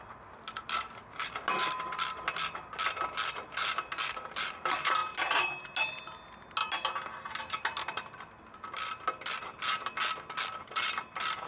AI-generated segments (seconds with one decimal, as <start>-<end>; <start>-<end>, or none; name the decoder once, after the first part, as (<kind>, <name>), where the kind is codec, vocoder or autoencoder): none